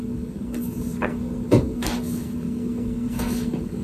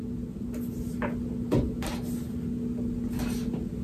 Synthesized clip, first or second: first